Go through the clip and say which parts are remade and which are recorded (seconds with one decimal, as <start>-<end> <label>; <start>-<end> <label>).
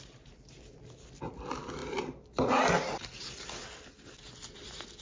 0.0-5.0 recorded